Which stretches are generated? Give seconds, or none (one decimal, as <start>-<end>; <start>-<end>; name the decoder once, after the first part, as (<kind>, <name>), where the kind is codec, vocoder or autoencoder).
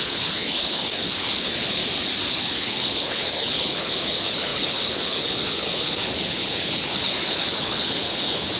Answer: 0.0-1.8 (codec, HILCodec); 2.3-8.6